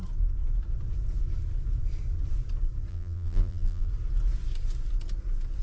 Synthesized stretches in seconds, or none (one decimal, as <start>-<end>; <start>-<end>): 2.9-3.9